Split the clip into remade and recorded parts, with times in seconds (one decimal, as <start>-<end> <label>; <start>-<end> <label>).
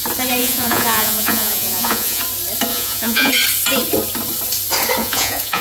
0.0-0.4 recorded; 0.4-2.2 remade; 2.2-2.7 recorded; 2.7-3.3 remade; 3.3-5.0 recorded; 5.0-5.6 remade